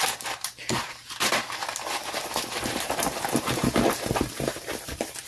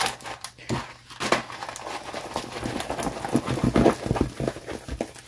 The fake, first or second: first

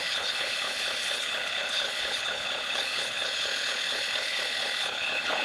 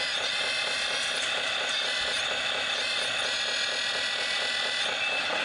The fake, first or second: first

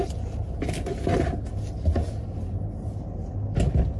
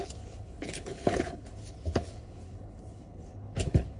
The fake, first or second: second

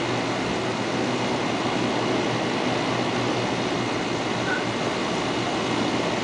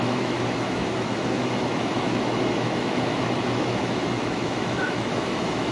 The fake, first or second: second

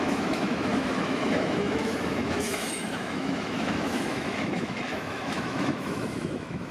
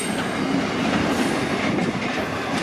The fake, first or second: first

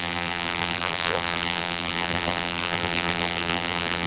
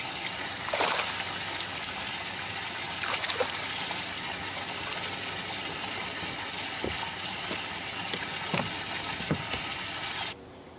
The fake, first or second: first